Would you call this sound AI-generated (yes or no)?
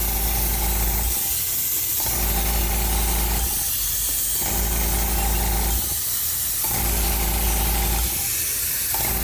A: no